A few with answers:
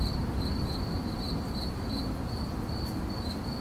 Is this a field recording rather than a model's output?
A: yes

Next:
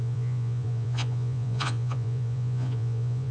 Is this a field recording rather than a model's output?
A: no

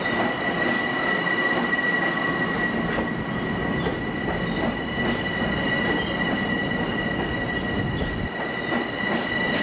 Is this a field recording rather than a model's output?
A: yes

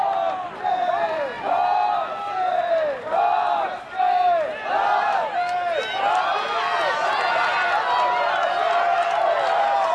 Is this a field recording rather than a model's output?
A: yes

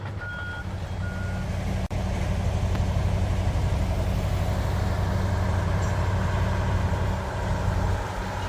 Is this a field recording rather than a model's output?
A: yes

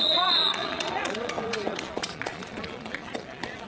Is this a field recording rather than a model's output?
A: no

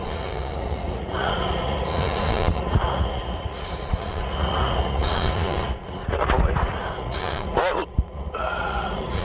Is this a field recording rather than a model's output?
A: no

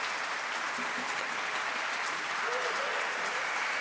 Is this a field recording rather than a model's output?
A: yes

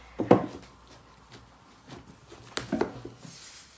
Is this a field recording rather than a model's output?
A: yes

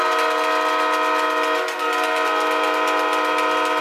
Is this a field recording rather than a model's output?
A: yes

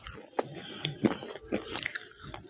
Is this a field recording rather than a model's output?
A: yes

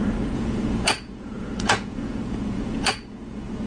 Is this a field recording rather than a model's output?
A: no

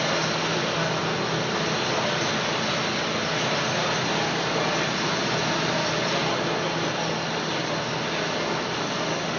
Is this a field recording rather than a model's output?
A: yes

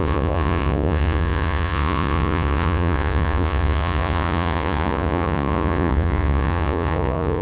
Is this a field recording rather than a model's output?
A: no